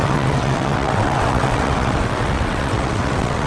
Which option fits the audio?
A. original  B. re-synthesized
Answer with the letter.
B